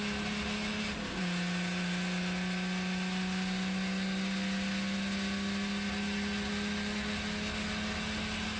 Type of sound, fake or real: real